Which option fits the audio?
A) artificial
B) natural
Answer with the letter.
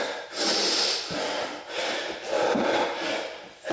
B